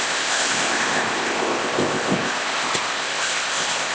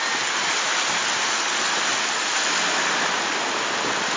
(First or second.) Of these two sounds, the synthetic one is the first